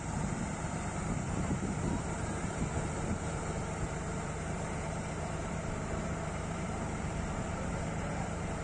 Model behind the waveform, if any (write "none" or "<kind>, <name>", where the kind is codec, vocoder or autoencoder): vocoder, BigVGAN v2